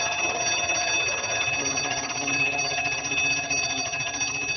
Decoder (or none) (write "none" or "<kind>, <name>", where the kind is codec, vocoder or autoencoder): vocoder, HiFi-GAN